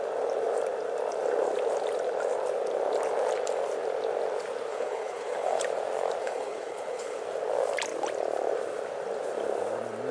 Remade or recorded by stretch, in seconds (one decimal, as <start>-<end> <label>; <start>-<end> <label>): 0.0-4.7 recorded; 4.7-5.6 remade; 5.6-6.2 recorded; 6.2-7.2 remade; 7.2-10.1 recorded